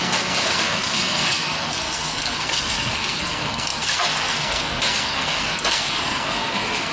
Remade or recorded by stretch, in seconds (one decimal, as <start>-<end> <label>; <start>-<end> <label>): 0.0-6.9 remade